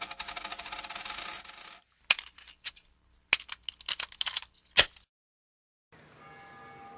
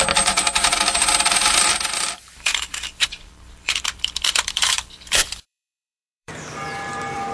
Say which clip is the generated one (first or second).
second